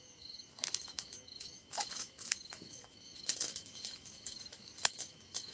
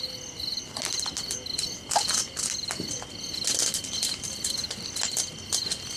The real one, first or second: second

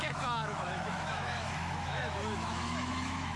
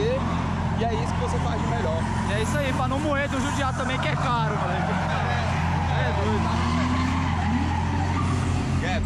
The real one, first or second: second